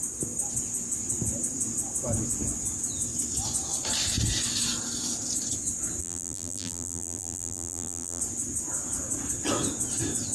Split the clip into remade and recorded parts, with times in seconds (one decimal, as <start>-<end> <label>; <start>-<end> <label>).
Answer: 0.0-6.0 recorded; 6.0-8.2 remade; 8.2-10.3 recorded